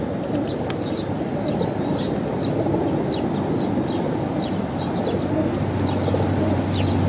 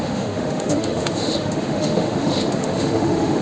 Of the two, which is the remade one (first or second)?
second